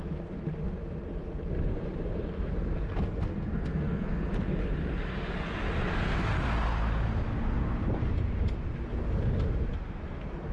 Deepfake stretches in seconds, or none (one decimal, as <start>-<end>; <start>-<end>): 2.9-4.3